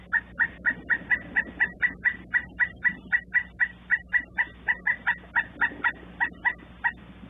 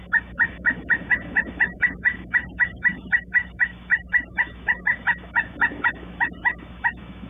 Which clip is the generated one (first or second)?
second